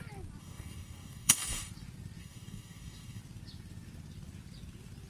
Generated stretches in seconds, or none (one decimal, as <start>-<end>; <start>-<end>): 0.4-1.7; 2.2-3.2

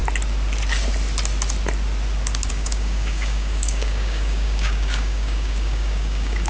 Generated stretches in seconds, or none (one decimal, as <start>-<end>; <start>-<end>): 2.5-6.5

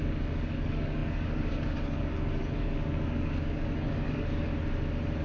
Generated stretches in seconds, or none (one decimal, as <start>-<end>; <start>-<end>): 0.0-4.5

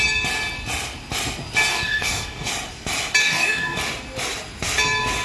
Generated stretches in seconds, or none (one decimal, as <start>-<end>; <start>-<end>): 1.7-2.5; 3.2-3.8

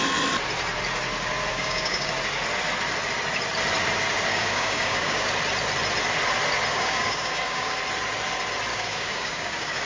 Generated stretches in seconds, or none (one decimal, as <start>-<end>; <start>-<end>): 1.5-2.1; 4.3-5.3; 6.7-7.8; 8.7-9.8

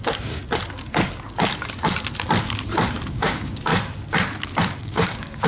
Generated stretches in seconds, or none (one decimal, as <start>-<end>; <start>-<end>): 0.0-0.4; 3.1-3.7; 4.8-5.5

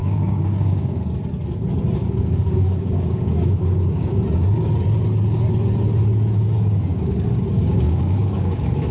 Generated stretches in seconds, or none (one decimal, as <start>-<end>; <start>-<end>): 0.0-1.0; 2.0-4.1; 6.9-8.9